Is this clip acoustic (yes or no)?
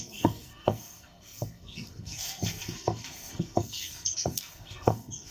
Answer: no